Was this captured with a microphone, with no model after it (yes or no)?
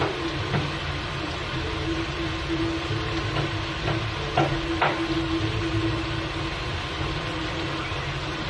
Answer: yes